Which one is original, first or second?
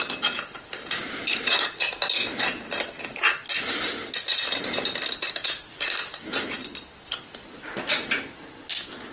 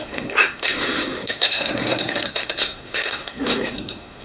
first